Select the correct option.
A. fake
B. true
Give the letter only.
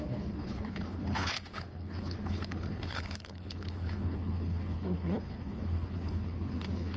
A